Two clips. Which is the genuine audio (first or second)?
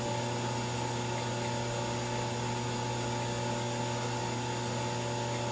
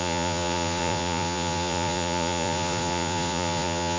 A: first